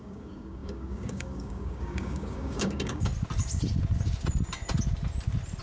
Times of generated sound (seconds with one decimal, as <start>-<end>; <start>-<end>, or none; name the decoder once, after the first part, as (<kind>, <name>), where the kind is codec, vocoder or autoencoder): 0.0-3.1 (codec, DAC)